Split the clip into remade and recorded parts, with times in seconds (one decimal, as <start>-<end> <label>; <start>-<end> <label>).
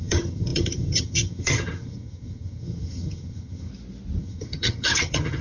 0.0-3.7 remade; 3.7-4.2 recorded; 4.2-5.4 remade